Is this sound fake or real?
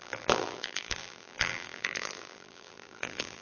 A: fake